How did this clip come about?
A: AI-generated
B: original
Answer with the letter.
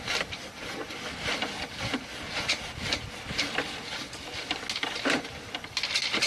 B